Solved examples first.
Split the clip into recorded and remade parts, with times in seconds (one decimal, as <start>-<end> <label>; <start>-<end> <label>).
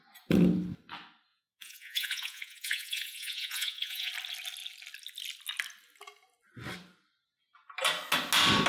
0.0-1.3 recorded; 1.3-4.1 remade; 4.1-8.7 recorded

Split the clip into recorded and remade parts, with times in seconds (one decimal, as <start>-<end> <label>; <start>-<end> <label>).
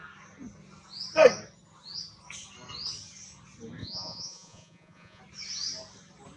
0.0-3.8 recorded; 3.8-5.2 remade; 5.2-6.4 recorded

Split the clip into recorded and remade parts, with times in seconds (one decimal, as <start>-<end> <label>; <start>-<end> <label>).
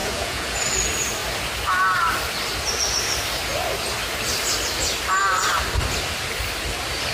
0.0-0.6 remade; 0.6-7.1 recorded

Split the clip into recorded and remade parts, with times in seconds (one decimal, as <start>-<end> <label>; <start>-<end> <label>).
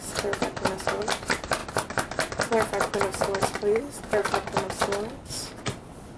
0.0-6.2 recorded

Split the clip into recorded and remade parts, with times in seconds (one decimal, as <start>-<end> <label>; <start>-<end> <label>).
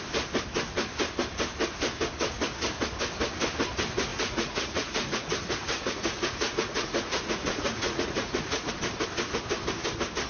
0.0-4.1 recorded; 4.1-8.7 remade; 8.7-10.3 recorded